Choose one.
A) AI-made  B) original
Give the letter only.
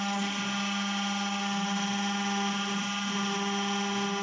B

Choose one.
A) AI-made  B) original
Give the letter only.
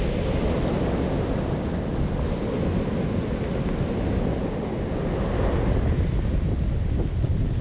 B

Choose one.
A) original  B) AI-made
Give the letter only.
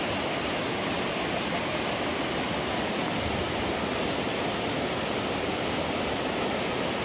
A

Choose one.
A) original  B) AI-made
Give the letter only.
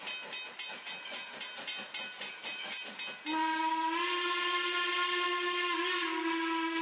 A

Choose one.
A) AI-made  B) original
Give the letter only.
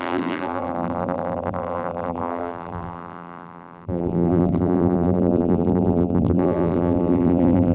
A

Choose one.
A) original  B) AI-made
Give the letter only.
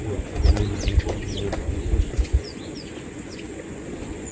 B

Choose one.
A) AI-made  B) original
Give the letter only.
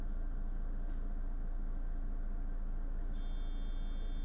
B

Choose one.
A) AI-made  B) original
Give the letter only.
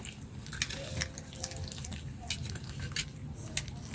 B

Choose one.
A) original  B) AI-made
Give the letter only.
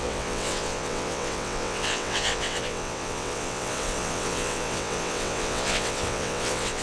B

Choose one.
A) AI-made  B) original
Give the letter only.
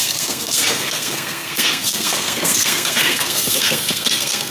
A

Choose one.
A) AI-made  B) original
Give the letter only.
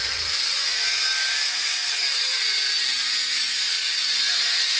B